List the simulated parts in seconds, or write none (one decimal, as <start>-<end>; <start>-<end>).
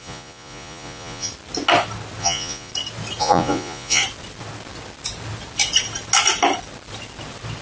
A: 0.0-1.3; 2.2-2.7; 3.2-4.0